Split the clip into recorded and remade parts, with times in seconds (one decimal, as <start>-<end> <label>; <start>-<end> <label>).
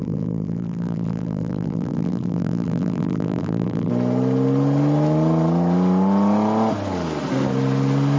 0.0-3.9 remade; 3.9-8.2 recorded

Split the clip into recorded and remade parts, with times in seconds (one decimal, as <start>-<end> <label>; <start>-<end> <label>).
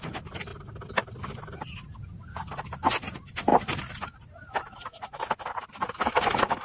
0.0-6.6 recorded